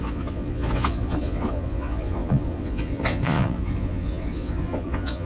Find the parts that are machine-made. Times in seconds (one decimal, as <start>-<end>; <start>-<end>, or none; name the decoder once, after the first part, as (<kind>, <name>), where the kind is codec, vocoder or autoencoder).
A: 0.0-5.3 (vocoder, Vocos)